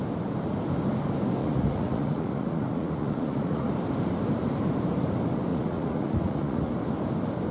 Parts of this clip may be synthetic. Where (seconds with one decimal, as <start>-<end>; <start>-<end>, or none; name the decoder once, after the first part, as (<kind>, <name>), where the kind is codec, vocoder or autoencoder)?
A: 1.4-3.7 (vocoder, Vocos); 5.5-6.7